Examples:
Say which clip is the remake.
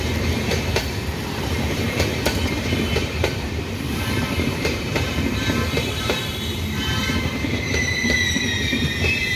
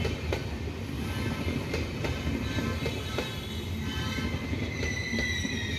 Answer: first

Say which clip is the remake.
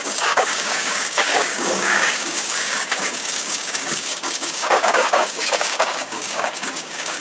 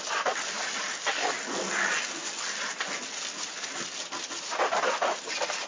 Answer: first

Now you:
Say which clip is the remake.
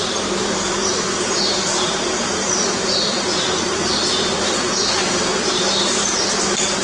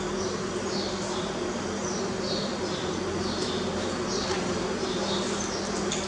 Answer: first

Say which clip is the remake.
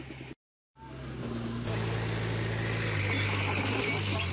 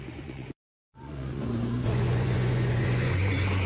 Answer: second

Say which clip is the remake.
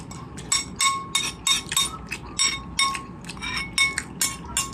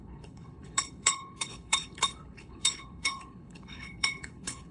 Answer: second